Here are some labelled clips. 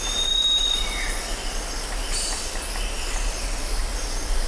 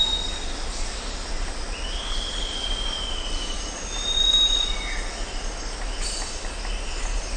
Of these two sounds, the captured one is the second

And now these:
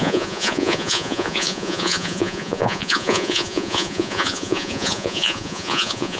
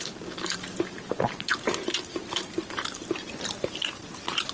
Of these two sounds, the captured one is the second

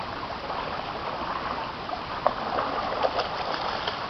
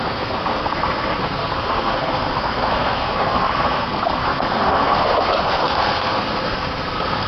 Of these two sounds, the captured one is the first